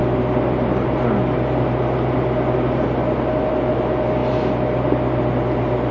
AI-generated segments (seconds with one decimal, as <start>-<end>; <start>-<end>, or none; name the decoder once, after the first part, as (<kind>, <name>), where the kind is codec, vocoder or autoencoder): none